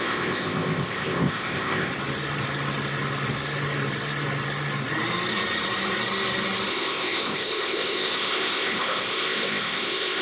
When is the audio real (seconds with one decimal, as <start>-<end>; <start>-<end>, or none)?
1.9-6.7